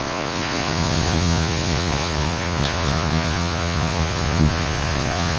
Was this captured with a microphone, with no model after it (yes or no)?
no